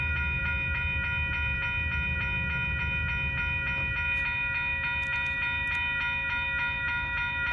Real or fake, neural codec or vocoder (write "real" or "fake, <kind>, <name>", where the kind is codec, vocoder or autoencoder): real